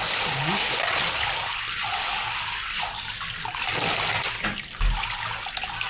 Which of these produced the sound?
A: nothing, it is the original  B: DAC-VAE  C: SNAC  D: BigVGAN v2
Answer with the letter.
A